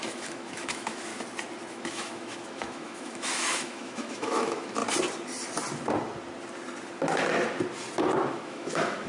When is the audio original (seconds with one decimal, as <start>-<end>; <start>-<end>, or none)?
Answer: 1.1-1.7; 4.8-8.3